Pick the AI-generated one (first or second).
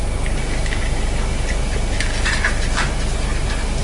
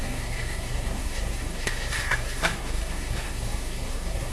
second